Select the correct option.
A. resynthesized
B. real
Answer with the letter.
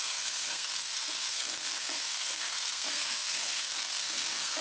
A